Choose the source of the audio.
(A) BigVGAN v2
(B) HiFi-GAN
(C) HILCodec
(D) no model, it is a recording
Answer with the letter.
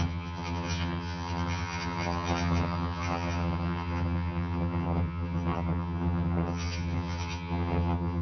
B